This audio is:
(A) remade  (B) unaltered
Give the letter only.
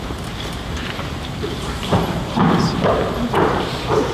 A